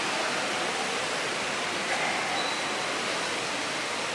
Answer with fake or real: real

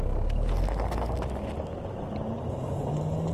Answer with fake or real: real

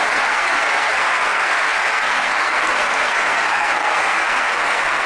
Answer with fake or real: fake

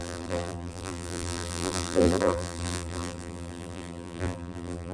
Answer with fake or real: fake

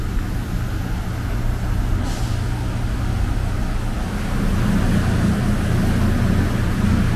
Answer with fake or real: real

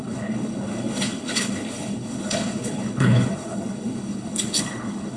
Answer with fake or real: fake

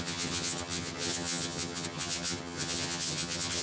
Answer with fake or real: fake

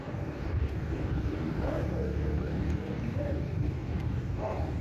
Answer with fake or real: fake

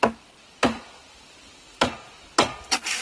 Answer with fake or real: real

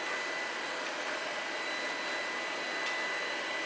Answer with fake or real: real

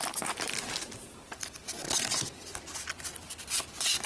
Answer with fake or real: real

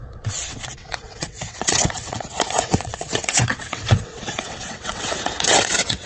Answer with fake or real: fake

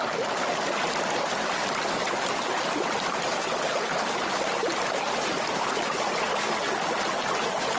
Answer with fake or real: real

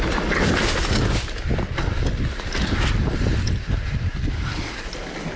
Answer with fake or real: real